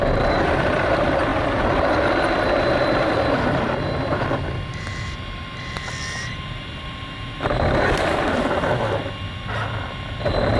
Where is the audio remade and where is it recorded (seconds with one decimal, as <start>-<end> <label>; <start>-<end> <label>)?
0.0-1.3 recorded; 1.3-2.1 remade; 2.1-4.1 recorded; 4.1-9.0 remade; 9.0-10.6 recorded